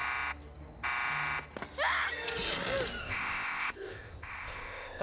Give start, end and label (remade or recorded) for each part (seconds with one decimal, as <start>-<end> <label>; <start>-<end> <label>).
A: 0.0-3.0 recorded; 3.0-5.0 remade